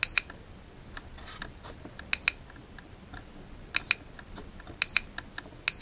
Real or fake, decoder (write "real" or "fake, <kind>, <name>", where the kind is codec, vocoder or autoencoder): real